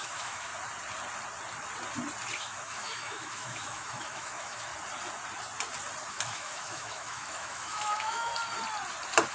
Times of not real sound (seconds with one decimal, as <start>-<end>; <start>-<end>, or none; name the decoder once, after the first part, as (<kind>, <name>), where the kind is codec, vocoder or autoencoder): 0.0-0.5 (autoencoder, DAC-VAE); 2.4-4.7; 6.1-8.3